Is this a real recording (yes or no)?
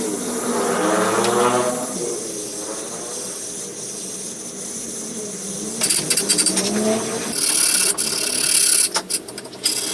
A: yes